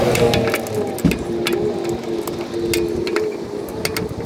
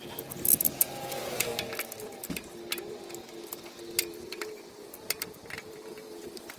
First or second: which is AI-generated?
second